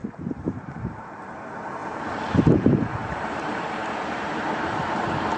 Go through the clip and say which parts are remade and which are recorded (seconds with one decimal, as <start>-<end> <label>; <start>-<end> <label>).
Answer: 0.0-1.8 remade; 1.8-2.3 recorded; 2.3-5.4 remade